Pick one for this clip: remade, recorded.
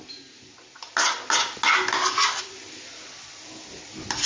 recorded